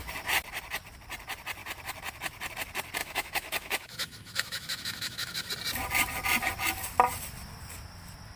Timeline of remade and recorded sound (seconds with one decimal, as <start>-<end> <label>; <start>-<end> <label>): 0.0-3.0 recorded; 3.0-5.5 remade; 5.5-8.4 recorded